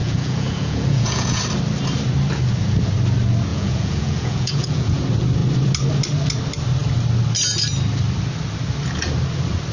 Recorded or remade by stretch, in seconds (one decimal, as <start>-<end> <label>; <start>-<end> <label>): 0.0-1.4 remade; 1.4-3.5 recorded; 3.5-5.0 remade; 5.0-9.7 recorded

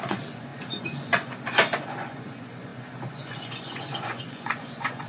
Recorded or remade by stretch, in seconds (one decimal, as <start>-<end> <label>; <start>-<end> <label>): 0.0-5.1 remade

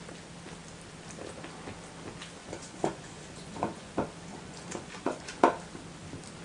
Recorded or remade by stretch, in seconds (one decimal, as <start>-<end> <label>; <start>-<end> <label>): 0.0-2.4 recorded; 2.4-3.9 remade; 3.9-4.3 recorded; 4.3-5.4 remade; 5.4-6.4 recorded

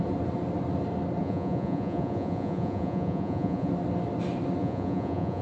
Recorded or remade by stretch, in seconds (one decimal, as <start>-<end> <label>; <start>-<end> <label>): 0.0-1.2 recorded; 1.2-3.7 remade; 3.7-4.6 recorded; 4.6-5.4 remade